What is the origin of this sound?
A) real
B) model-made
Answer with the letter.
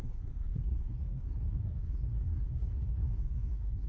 B